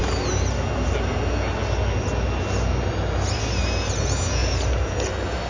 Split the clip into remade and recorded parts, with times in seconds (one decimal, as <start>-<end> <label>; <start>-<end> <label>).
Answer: 0.0-5.5 recorded